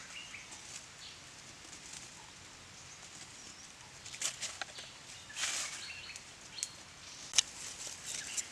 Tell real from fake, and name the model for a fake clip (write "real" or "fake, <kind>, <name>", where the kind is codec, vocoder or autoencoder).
real